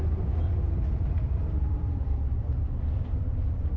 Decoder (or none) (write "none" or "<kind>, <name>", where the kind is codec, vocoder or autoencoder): vocoder, BigVGAN v2